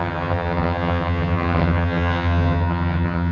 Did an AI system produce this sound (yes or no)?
yes